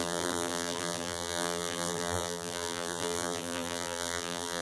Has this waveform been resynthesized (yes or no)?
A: yes